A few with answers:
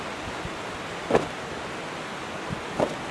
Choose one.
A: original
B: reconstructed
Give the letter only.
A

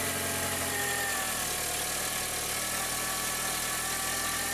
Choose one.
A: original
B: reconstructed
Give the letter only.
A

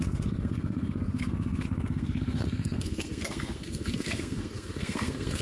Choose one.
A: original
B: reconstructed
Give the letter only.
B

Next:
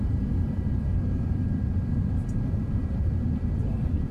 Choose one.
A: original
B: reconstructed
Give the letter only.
B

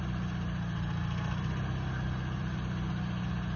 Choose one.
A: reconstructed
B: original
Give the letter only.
B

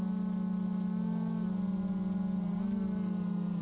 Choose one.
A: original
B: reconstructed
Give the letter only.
A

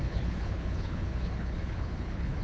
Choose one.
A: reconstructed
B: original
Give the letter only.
A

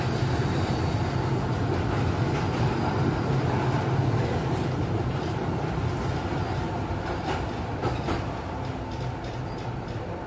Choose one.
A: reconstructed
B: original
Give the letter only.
B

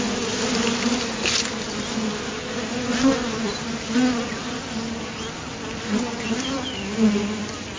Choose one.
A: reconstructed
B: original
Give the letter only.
B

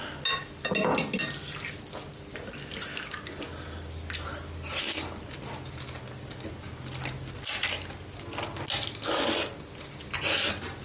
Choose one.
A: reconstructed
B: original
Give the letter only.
B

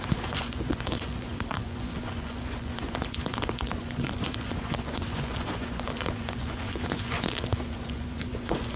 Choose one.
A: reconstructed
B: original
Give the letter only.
A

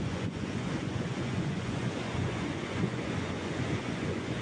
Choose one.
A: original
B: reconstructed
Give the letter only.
B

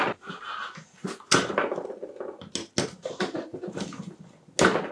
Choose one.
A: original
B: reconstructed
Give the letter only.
A